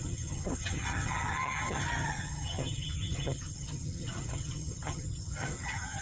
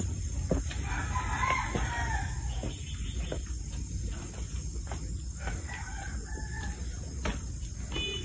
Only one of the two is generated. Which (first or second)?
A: first